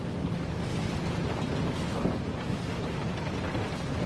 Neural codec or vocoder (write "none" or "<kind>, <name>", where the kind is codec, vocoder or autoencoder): none